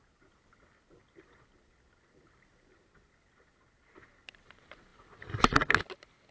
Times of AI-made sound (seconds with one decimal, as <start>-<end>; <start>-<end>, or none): none